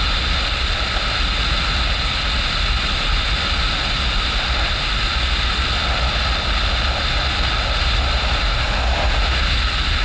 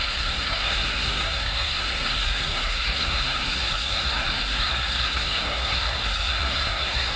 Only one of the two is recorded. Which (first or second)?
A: first